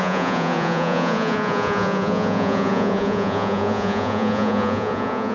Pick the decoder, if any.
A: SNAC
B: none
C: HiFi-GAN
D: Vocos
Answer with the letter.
D